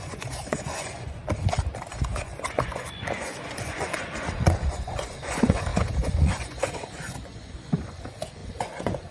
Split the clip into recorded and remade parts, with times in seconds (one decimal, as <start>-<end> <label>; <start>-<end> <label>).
0.0-1.2 remade; 1.2-1.9 recorded; 1.9-9.1 remade